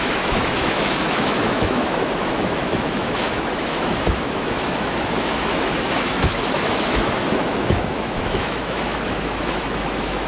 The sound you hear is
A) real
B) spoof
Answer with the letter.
B